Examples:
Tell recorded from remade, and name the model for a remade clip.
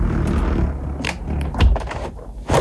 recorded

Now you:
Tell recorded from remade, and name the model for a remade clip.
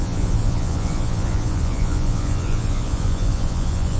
remade, vocoder, Vocos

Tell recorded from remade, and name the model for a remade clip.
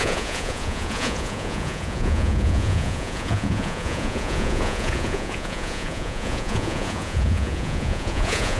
remade, vocoder, Vocos